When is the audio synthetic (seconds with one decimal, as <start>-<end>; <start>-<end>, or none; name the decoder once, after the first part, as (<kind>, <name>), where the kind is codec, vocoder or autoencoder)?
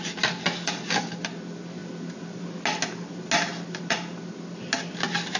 none